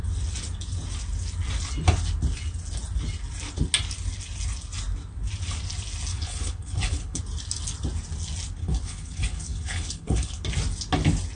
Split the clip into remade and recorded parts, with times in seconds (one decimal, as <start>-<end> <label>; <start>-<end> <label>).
0.0-6.1 recorded; 6.1-7.2 remade; 7.2-8.6 recorded; 8.6-10.4 remade; 10.4-11.3 recorded